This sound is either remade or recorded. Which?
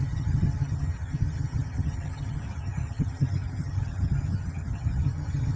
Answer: remade